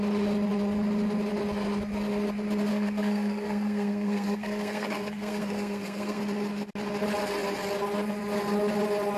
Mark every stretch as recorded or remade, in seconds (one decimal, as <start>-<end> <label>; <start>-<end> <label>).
0.0-2.7 recorded; 2.7-6.2 remade; 6.2-9.2 recorded